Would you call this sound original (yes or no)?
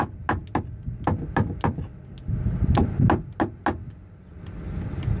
yes